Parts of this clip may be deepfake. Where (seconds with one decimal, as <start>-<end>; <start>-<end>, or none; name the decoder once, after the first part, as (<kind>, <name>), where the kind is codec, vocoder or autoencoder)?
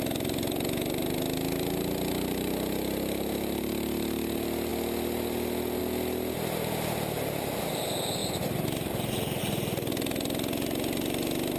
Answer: none